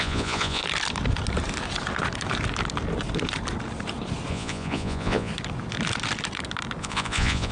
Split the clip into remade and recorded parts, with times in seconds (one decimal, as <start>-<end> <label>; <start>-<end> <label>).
0.0-0.6 remade; 0.6-4.3 recorded; 4.3-5.3 remade; 5.3-6.8 recorded; 6.8-7.5 remade